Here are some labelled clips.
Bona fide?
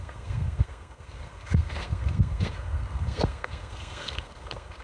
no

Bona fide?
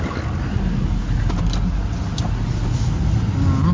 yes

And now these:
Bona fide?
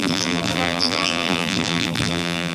no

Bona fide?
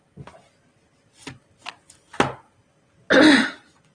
yes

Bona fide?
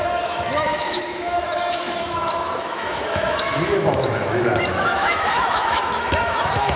no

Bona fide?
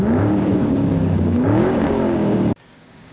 no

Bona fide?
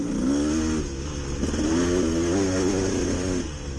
yes